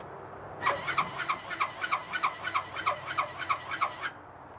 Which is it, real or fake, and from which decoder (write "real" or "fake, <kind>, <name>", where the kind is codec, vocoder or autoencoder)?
real